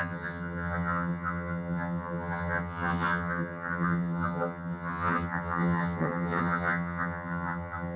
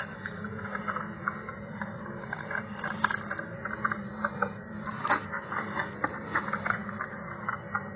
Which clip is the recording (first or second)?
second